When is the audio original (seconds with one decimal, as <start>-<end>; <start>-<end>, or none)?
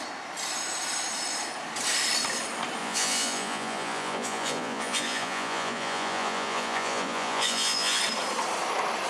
0.0-2.8; 8.0-9.1